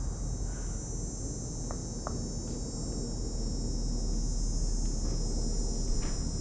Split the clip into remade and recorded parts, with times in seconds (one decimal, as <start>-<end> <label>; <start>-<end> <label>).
0.0-6.4 recorded